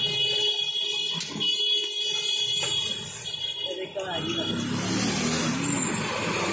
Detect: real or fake real